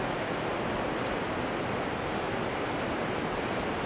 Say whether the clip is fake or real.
real